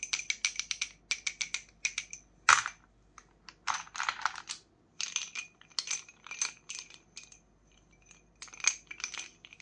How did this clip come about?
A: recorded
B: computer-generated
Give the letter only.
A